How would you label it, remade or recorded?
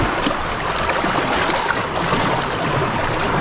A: recorded